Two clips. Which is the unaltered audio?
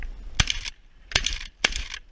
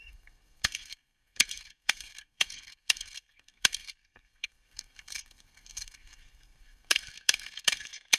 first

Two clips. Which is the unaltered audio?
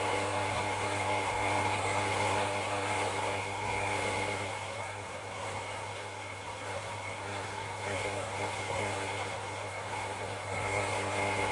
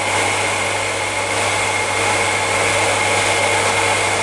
second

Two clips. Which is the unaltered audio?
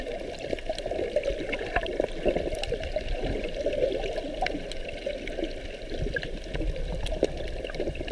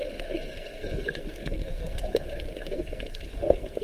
first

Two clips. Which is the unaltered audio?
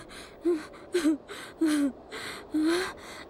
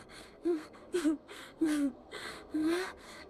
first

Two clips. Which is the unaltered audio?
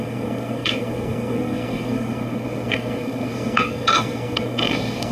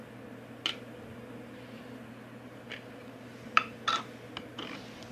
second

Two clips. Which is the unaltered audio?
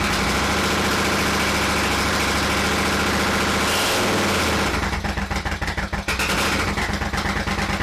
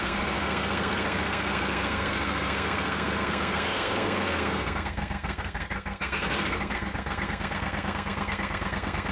first